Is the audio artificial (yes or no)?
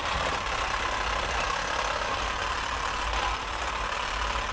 no